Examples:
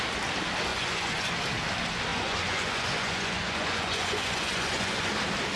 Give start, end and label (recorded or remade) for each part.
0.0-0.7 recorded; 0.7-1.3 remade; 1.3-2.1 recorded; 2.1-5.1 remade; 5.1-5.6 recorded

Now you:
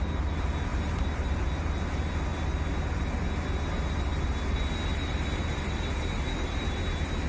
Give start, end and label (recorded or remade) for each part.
0.0-0.7 recorded; 0.7-1.4 remade; 1.4-4.9 recorded; 4.9-6.8 remade; 6.8-7.3 recorded

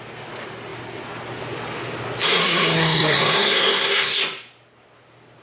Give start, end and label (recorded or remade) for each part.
0.0-2.3 recorded; 2.3-4.2 remade; 4.2-5.4 recorded

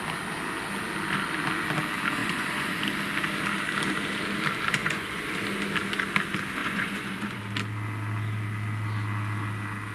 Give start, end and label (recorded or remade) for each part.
0.0-2.2 recorded; 2.2-2.7 remade; 2.7-4.8 recorded; 4.8-5.3 remade; 5.3-6.6 recorded; 6.6-7.4 remade; 7.4-9.9 recorded

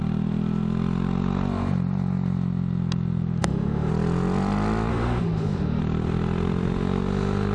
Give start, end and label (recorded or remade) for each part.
0.0-3.4 recorded; 3.4-3.9 remade; 3.9-4.9 recorded; 4.9-5.8 remade; 5.8-7.5 recorded

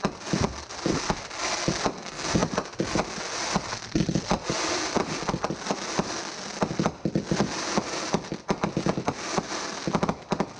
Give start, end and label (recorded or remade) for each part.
0.0-10.6 recorded